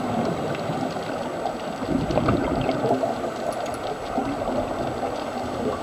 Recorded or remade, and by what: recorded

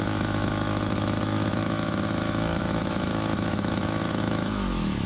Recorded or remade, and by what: remade, autoencoder, DAC-VAE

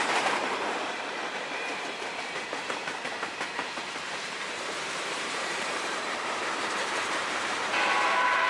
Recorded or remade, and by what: remade, vocoder, BigVGAN v2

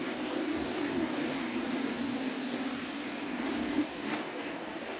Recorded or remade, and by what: remade, codec, DAC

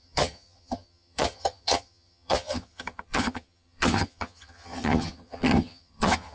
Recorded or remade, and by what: remade, vocoder, HiFi-GAN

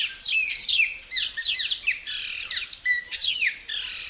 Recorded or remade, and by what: remade, vocoder, BigVGAN v2